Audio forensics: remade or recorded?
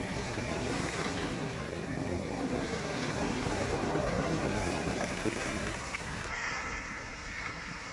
remade